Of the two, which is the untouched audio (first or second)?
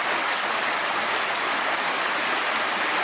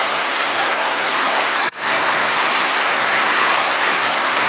first